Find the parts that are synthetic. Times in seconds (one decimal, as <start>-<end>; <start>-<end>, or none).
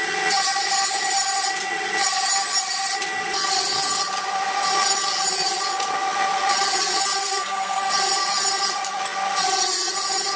7.2-7.9